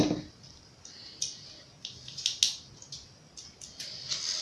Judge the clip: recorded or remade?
recorded